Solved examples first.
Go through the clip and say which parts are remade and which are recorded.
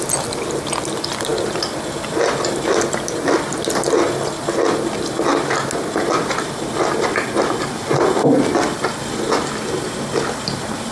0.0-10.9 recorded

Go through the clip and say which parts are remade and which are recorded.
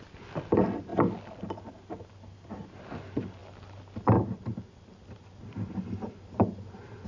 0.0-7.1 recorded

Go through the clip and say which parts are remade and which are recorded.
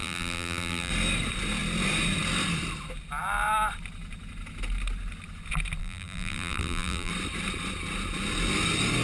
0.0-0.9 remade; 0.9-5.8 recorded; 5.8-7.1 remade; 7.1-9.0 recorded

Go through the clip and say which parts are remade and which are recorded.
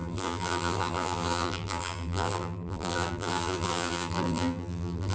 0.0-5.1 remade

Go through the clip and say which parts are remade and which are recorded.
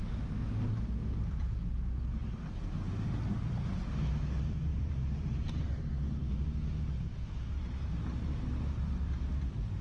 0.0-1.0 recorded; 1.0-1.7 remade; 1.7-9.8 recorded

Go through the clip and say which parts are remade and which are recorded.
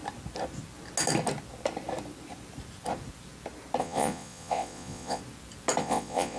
0.0-3.8 recorded; 3.8-5.2 remade; 5.2-5.8 recorded; 5.8-6.4 remade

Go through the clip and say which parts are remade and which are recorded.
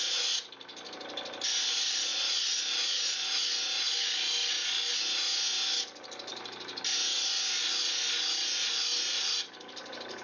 0.0-10.2 recorded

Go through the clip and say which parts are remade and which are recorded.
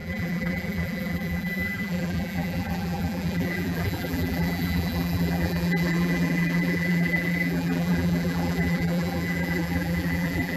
0.0-10.6 remade